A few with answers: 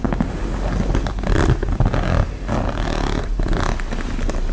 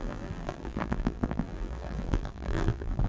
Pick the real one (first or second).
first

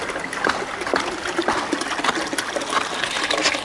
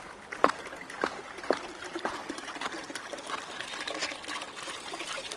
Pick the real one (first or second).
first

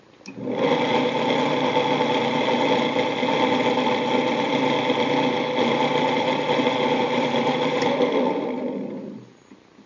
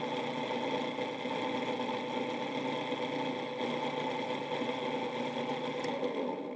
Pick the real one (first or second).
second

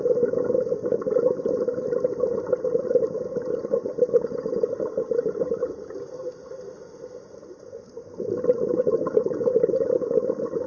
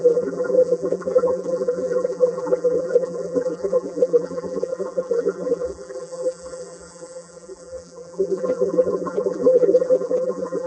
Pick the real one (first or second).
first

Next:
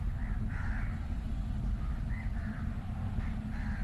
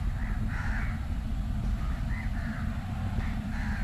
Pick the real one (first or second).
first